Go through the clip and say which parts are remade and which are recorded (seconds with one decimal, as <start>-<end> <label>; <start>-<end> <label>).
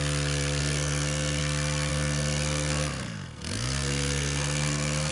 0.0-0.6 recorded; 0.6-1.4 remade; 1.4-1.9 recorded; 1.9-5.1 remade